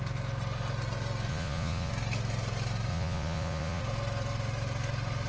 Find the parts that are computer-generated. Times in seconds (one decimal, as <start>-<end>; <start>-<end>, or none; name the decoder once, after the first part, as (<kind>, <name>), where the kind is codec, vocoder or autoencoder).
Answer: 1.3-1.9 (vocoder, Vocos); 2.9-3.8